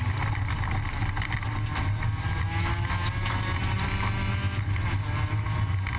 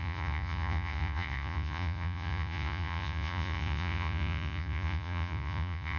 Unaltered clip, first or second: first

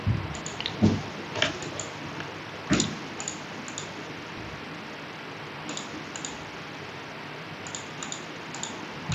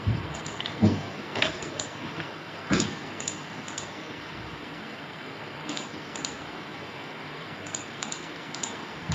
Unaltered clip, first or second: first